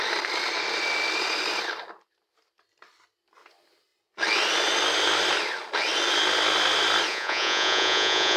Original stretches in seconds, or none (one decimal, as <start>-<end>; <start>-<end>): 0.0-7.1